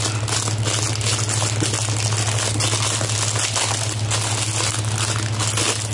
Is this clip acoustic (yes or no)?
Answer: yes